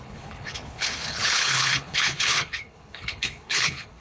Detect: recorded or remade remade